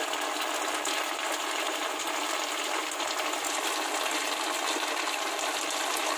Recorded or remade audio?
recorded